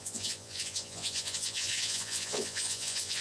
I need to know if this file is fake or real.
fake